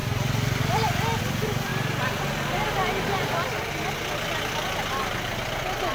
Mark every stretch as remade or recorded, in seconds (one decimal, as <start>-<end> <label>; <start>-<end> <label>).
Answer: 0.0-5.9 recorded